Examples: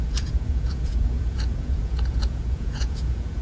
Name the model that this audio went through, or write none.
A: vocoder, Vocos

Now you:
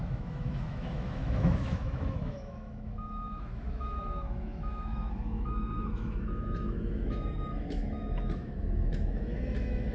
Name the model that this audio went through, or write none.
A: autoencoder, DAC-VAE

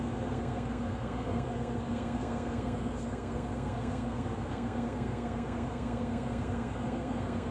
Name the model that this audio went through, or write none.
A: codec, SNAC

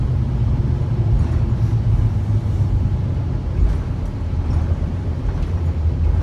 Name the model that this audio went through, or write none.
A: none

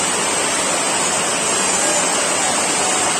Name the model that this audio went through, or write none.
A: none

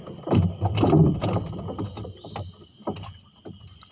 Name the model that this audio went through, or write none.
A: none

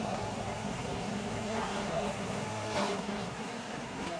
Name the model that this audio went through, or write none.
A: codec, SNAC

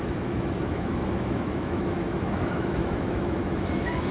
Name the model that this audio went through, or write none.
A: autoencoder, DAC-VAE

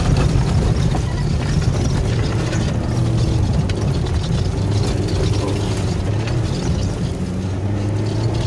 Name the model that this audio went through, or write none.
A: none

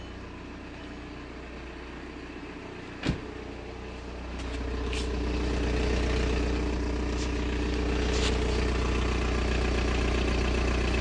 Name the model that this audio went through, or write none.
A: none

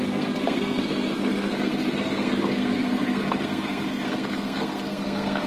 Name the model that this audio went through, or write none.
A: codec, SNAC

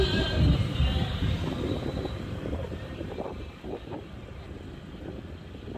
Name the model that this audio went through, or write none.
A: vocoder, BigVGAN v2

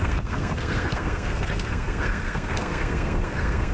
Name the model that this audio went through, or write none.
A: codec, SNAC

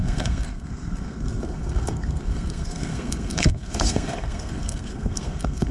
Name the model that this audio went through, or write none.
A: codec, SNAC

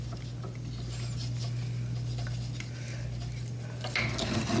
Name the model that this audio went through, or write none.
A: none